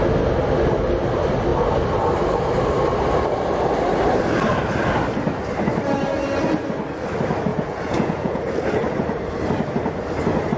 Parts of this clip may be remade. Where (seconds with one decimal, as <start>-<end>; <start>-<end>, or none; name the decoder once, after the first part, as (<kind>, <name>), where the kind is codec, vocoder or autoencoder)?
7.5-8.4 (vocoder, Vocos)